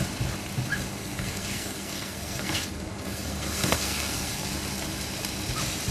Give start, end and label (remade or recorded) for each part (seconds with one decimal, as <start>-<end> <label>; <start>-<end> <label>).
0.0-1.0 recorded; 1.0-4.5 remade; 4.5-5.9 recorded